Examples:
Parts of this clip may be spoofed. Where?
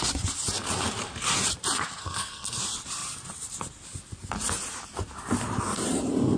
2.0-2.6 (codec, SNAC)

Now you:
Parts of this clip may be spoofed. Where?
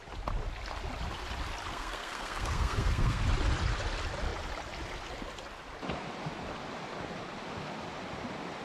1.7-3.2 (codec, SNAC)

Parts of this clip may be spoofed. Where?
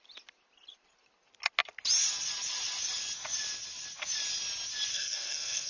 4.9-5.7 (codec, SNAC)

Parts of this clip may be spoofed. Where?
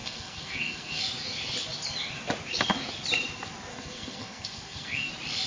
0.0-1.0 (codec, SNAC); 3.7-5.1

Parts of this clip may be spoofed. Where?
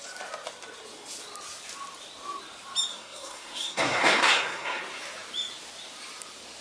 2.9-4.8 (codec, SNAC)